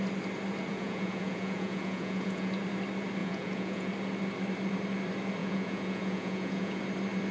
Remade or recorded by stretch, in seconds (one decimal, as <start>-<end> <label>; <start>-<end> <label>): 0.0-0.7 recorded; 0.7-2.5 remade; 2.5-3.2 recorded; 3.2-3.9 remade; 3.9-5.4 recorded; 5.4-6.8 remade; 6.8-7.3 recorded